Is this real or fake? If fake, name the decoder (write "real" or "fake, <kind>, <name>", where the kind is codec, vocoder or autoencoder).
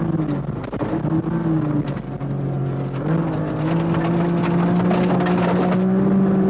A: real